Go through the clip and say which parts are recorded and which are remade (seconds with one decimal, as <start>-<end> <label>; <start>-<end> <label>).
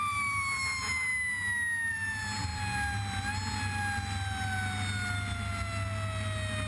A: 0.0-1.1 remade; 1.1-1.9 recorded; 1.9-2.5 remade; 2.5-6.7 recorded